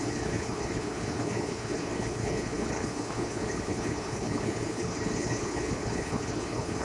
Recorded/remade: remade